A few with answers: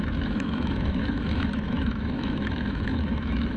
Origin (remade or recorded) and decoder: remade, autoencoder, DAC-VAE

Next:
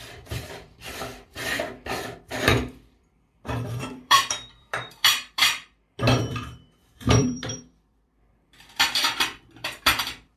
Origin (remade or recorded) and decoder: remade, vocoder, BigVGAN v2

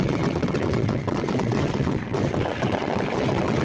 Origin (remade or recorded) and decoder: remade, vocoder, WaveNeXt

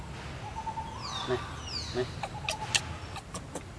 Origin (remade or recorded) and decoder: recorded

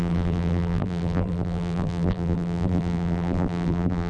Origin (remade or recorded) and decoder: remade, vocoder, BigVGAN v2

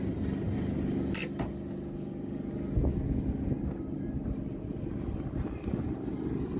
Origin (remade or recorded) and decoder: recorded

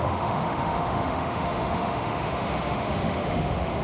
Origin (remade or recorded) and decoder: remade, autoencoder, DAC-VAE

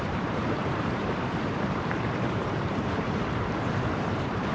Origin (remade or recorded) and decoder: remade, vocoder, BigVGAN v2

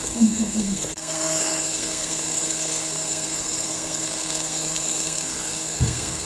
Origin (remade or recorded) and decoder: remade, codec, SNAC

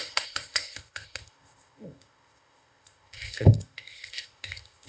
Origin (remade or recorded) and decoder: remade, codec, ZipCodec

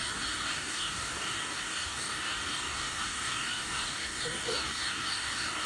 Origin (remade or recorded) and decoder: remade, codec, DAC